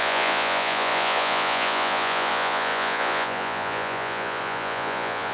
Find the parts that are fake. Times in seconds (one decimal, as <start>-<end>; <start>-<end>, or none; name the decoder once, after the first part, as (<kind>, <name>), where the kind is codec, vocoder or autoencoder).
0.0-5.3 (vocoder, Vocos)